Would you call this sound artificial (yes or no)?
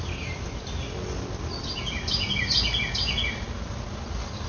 no